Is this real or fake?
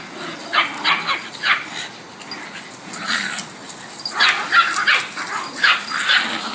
real